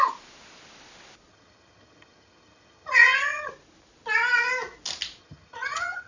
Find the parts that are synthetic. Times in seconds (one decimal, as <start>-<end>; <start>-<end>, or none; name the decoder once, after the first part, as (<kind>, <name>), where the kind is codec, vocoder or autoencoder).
1.3-3.5 (vocoder, HiFi-GAN); 5.2-6.1